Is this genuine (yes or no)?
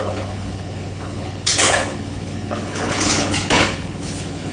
no